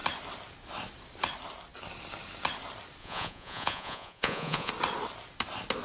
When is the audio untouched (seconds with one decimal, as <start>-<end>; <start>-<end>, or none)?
0.0-3.0; 4.7-5.8